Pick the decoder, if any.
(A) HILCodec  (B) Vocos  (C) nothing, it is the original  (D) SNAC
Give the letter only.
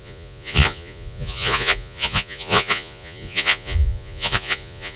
B